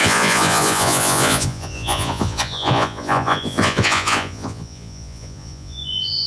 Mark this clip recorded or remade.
remade